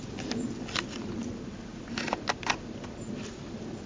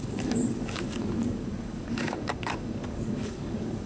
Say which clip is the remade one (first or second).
second